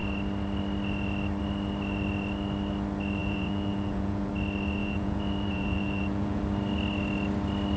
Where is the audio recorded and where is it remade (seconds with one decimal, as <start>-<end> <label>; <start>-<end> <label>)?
0.0-3.2 recorded; 3.2-4.3 remade; 4.3-4.8 recorded; 4.8-6.4 remade; 6.4-7.8 recorded